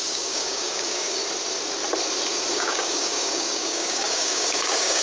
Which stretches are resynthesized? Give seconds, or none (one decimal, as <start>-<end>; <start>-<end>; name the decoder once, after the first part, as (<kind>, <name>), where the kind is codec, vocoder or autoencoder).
0.0-1.2 (codec, DAC); 2.5-5.0